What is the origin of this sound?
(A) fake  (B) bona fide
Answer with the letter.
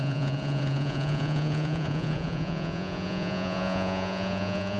A